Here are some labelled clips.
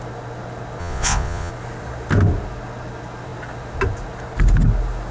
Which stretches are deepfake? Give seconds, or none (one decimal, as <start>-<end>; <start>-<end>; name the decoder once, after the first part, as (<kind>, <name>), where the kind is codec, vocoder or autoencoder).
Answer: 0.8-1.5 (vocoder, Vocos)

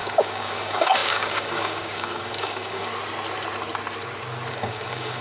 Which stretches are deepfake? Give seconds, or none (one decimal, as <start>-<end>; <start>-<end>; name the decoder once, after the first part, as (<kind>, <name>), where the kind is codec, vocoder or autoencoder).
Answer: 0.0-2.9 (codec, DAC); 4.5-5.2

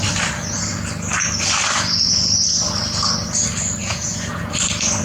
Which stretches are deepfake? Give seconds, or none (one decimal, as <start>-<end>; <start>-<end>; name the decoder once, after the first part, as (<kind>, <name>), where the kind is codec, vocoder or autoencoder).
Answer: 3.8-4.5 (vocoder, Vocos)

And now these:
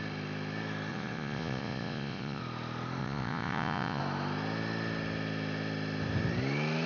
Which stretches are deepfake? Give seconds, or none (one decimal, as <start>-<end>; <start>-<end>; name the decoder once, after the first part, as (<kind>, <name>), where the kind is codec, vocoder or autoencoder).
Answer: 0.9-2.4 (vocoder, Vocos); 3.0-4.0

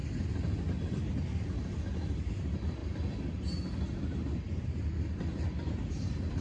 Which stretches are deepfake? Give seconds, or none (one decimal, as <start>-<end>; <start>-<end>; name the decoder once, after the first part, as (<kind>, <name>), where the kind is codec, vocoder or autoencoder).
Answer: 2.1-2.8 (vocoder, BigVGAN v2); 5.7-6.4

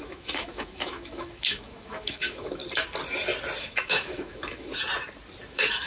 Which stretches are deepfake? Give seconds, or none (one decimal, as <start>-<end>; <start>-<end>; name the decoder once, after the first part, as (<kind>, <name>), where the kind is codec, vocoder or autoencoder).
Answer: 0.0-2.6 (autoencoder, DAC-VAE); 3.6-4.7; 5.5-5.9

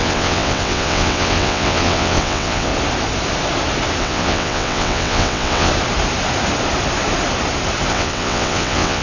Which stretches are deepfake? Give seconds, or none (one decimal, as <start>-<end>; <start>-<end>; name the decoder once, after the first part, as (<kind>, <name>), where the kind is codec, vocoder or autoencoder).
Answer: 0.0-2.7 (vocoder, WaveNeXt); 4.0-5.7; 7.9-9.0